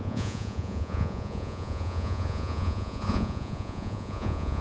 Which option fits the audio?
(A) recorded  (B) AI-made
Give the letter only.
B